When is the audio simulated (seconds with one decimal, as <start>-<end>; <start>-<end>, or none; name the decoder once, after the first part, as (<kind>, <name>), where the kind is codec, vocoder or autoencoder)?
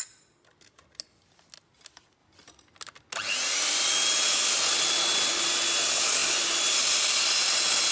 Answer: none